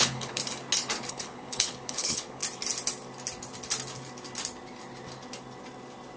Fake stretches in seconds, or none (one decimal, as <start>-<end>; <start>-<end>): 0.0-0.4; 1.1-2.4